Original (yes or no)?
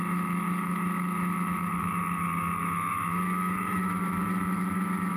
no